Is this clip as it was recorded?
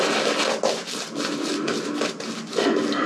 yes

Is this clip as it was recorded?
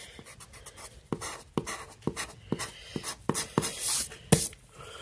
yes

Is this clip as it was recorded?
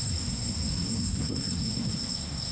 no